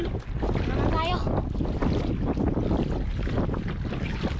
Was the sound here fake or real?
real